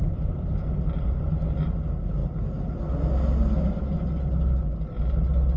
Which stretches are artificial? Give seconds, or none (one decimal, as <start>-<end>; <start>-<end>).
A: none